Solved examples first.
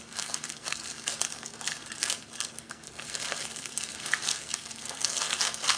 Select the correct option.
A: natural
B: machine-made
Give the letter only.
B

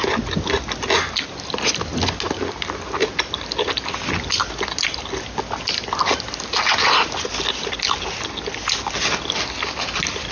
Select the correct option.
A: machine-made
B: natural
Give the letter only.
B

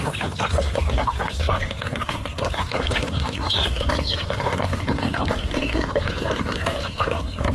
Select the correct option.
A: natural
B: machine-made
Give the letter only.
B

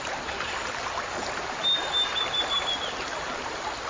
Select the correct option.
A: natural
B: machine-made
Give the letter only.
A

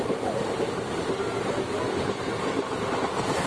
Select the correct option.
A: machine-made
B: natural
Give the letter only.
B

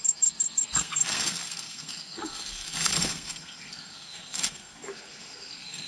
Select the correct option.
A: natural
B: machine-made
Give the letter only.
B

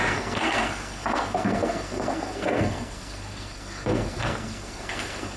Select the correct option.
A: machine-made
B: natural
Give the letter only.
A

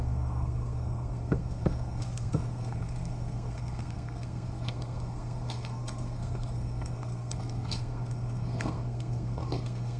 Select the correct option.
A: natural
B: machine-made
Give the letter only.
B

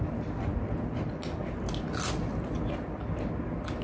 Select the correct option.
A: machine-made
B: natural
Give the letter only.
B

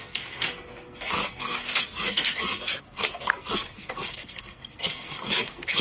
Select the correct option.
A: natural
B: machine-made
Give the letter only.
B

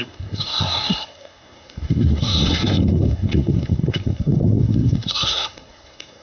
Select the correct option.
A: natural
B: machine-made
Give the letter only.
B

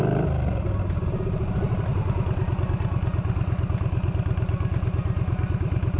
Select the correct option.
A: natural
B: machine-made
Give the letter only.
A